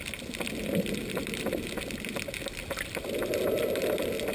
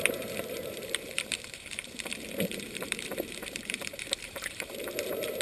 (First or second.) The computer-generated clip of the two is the second